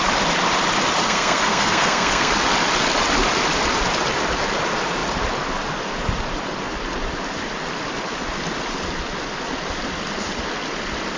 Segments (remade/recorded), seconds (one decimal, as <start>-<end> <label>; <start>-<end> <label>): 0.0-1.0 recorded; 1.0-2.3 remade; 2.3-11.2 recorded